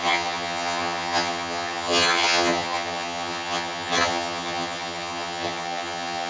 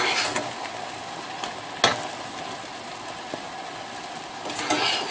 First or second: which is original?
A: second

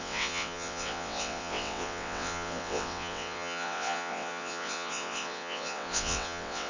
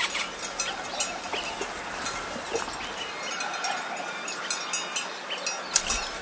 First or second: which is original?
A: second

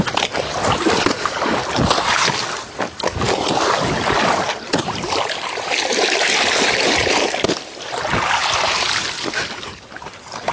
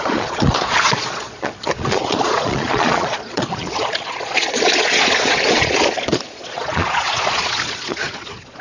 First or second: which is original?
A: first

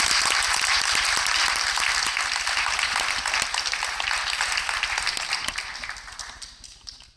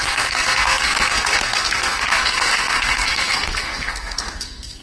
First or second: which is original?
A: first